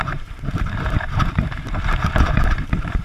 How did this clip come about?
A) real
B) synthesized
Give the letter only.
B